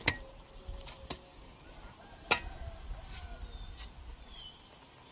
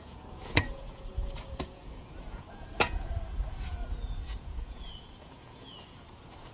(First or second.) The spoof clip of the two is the second